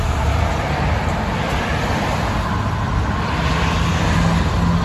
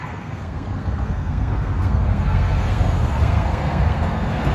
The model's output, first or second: second